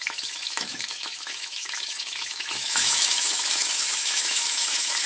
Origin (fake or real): fake